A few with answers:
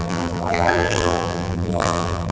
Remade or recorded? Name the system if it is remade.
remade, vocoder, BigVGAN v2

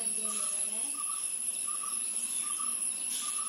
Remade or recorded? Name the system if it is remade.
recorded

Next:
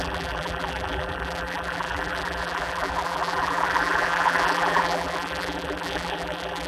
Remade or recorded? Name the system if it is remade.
remade, vocoder, BigVGAN v2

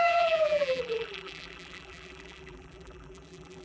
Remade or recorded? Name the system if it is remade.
remade, vocoder, BigVGAN v2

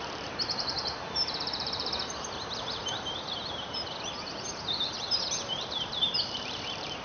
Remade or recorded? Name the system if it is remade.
remade, vocoder, BigVGAN v2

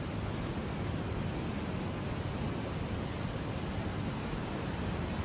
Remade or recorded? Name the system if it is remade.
recorded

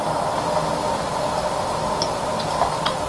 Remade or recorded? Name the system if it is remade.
recorded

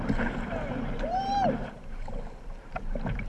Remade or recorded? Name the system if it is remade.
remade, vocoder, BigVGAN v2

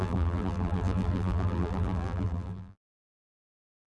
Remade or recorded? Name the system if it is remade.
remade, vocoder, BigVGAN v2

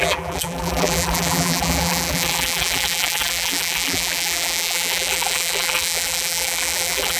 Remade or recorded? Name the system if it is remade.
remade, vocoder, BigVGAN v2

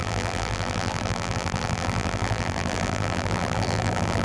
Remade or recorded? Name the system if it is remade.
remade, vocoder, BigVGAN v2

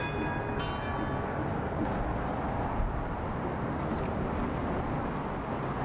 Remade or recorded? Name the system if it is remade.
recorded